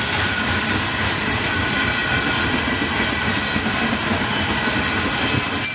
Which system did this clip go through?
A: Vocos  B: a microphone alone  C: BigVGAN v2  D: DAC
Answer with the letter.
B